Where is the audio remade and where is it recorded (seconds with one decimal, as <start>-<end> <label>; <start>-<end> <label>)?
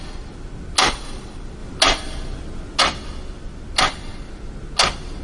0.0-5.2 recorded